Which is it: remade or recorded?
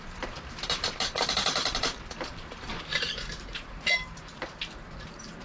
remade